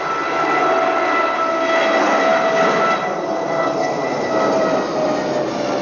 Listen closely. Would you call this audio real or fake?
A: real